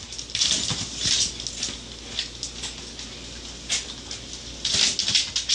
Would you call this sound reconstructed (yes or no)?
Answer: no